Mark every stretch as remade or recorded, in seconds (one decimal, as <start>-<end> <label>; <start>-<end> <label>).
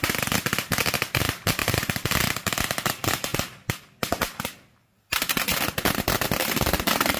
0.0-1.6 recorded; 1.6-2.3 remade; 2.3-7.2 recorded